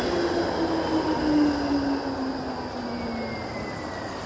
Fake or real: real